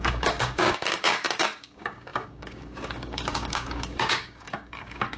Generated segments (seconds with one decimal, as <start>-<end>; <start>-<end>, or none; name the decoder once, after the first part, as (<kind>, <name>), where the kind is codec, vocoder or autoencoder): 0.0-5.2 (codec, DAC)